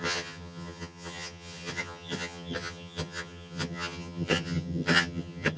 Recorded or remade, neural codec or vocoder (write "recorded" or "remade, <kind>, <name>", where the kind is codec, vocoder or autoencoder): remade, vocoder, HiFi-GAN